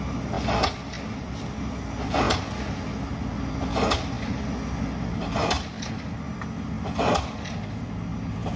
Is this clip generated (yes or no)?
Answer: no